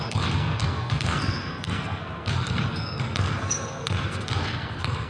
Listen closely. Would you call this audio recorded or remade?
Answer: remade